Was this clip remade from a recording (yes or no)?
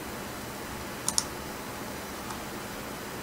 no